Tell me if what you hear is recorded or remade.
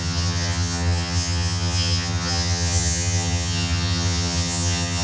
remade